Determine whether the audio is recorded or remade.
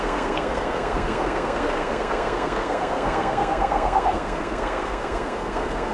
remade